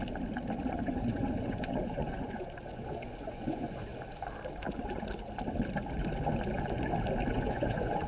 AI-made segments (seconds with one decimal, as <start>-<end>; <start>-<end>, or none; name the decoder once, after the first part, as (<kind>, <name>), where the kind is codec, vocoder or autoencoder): 0.7-3.9 (vocoder, Vocos); 7.3-8.1